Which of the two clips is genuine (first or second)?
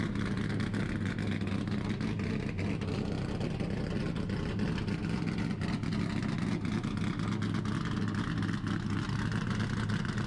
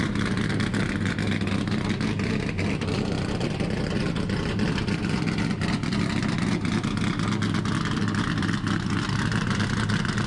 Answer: first